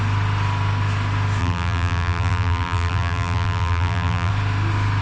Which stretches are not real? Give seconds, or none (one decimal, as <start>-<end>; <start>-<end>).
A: 1.4-4.3